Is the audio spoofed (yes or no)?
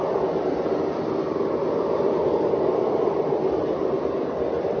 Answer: no